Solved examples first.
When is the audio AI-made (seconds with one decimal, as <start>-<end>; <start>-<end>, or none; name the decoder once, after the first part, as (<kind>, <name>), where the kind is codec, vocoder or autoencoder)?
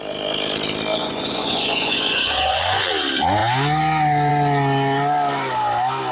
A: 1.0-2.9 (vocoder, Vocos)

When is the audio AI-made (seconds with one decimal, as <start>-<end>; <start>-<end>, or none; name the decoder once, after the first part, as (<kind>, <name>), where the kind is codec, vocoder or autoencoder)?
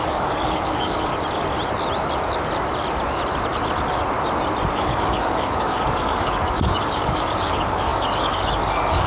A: 0.0-1.1 (codec, DAC); 4.7-9.1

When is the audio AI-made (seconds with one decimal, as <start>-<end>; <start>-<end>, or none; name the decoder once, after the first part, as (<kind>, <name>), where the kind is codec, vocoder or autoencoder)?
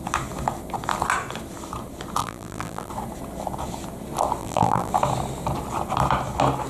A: 2.2-2.9 (vocoder, BigVGAN v2); 4.4-4.9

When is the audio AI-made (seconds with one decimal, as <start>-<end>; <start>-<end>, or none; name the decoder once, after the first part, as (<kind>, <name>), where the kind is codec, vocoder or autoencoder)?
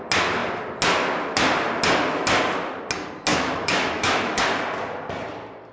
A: 3.3-4.4 (autoencoder, DAC-VAE)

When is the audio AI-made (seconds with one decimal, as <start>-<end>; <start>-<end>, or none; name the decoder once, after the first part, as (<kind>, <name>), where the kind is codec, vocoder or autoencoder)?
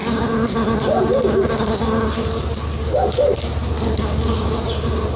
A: none